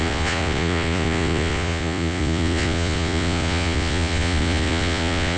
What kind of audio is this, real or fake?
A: fake